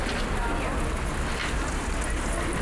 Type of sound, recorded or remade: recorded